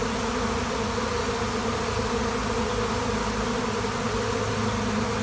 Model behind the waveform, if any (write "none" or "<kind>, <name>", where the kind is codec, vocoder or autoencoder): none